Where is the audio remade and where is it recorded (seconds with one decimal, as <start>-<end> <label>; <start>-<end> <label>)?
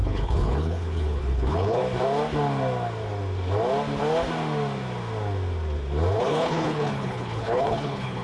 0.0-1.8 remade; 1.8-6.2 recorded; 6.2-8.2 remade